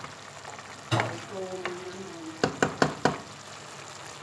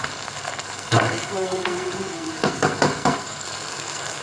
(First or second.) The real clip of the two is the first